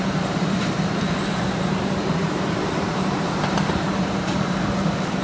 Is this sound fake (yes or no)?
yes